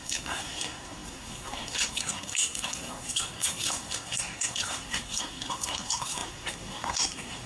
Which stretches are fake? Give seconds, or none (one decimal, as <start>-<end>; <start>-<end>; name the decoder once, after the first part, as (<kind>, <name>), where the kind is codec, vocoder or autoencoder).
0.0-7.5 (codec, SNAC)